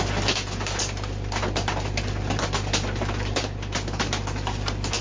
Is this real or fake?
real